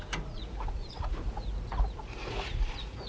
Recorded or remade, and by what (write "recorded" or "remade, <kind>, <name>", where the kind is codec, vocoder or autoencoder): remade, vocoder, Vocos